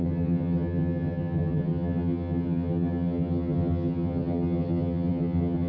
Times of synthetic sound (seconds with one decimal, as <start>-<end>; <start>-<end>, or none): 0.0-5.7